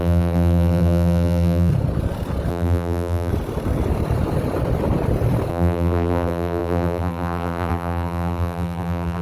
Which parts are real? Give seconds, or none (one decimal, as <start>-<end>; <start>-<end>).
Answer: 1.7-2.5; 3.3-5.5

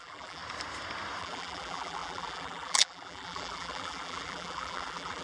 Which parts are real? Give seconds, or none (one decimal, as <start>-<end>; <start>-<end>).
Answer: 0.4-1.2

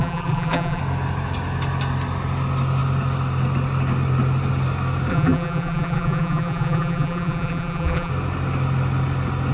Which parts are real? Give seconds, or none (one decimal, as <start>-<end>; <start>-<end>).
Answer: 0.8-5.1; 8.1-9.5

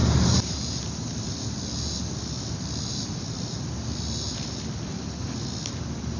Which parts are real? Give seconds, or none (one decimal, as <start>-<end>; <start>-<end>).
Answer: 0.8-6.2

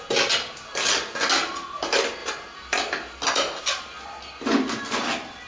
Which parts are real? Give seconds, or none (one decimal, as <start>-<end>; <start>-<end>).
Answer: 0.0-2.2; 3.6-5.5

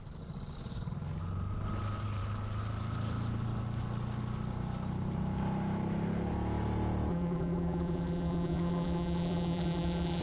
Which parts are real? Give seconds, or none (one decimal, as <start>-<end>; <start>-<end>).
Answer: 0.0-7.1